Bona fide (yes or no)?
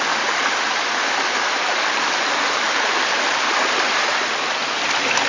yes